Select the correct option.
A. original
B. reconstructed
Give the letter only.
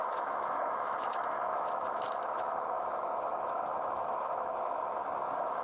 B